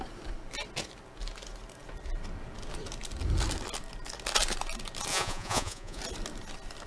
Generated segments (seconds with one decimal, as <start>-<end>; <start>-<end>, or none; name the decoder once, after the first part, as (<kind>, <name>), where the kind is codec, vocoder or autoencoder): 5.1-6.0 (vocoder, Vocos)